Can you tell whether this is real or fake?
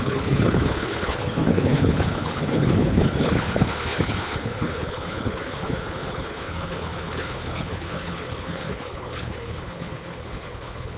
fake